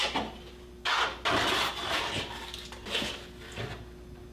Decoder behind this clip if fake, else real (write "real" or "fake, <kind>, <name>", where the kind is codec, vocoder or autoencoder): real